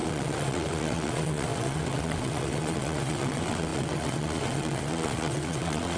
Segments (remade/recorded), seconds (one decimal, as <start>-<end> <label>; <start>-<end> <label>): 0.0-6.0 remade